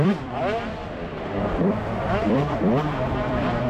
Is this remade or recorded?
remade